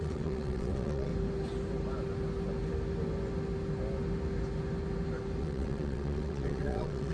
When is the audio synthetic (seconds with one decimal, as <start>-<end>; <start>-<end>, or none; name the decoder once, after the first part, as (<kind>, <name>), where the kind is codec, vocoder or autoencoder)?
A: 0.0-1.1 (vocoder, WaveNeXt); 5.4-7.1